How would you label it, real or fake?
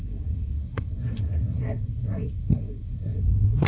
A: fake